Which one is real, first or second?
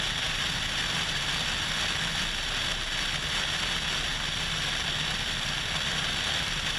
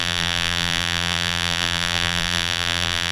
first